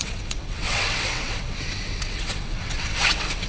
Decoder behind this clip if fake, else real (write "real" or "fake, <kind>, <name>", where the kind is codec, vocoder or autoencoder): fake, vocoder, WaveNeXt